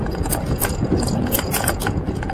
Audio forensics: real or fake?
fake